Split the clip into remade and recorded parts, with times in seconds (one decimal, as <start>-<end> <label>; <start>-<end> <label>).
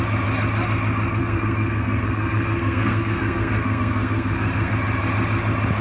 0.0-1.2 recorded; 1.2-4.7 remade; 4.7-5.8 recorded